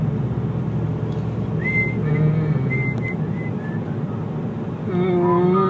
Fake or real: real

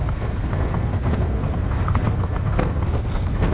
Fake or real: fake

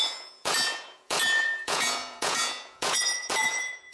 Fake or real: fake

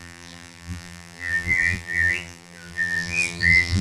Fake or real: fake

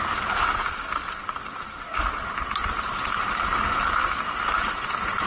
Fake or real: real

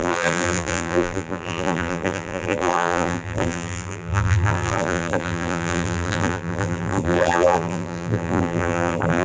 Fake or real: fake